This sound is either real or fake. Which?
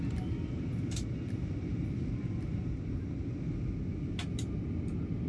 real